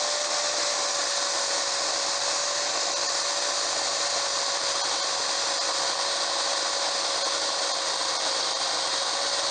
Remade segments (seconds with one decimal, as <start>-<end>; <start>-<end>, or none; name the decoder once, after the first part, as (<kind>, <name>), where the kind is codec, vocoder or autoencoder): none